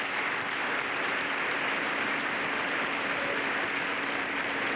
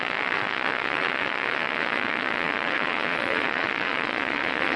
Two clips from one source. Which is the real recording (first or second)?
first